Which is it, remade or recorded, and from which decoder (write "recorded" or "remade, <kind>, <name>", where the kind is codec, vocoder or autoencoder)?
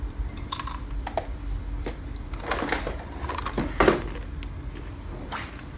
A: remade, vocoder, BigVGAN v2